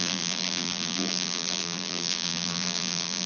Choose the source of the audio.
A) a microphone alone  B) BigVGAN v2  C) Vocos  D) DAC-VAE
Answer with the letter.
B